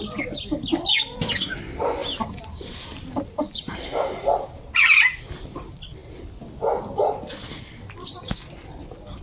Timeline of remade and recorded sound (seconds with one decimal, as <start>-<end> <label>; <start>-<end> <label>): 0.0-2.0 recorded; 2.0-4.7 remade; 4.7-9.2 recorded